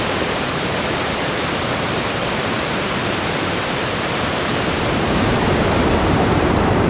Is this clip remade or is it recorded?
remade